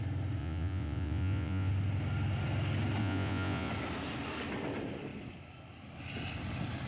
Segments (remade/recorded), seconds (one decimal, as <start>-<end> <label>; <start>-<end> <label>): 0.0-0.4 recorded; 0.4-1.7 remade; 1.7-3.0 recorded; 3.0-3.7 remade; 3.7-6.9 recorded